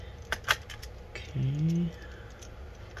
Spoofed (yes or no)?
no